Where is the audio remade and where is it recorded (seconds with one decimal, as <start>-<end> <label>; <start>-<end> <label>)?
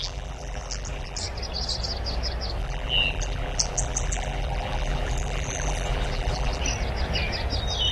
0.0-1.2 remade; 1.2-2.6 recorded; 2.6-6.6 remade; 6.6-7.9 recorded